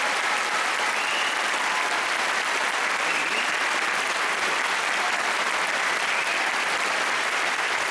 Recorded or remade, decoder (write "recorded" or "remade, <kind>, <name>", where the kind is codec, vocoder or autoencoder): remade, vocoder, BigVGAN v2